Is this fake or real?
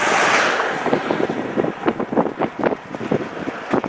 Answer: fake